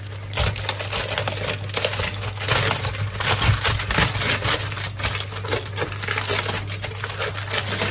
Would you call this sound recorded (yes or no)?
yes